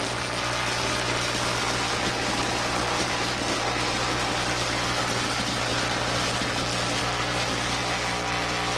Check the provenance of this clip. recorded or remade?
recorded